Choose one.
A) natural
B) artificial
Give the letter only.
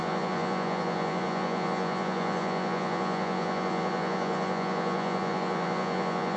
B